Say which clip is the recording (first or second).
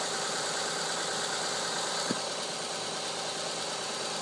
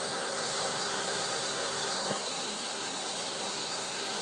first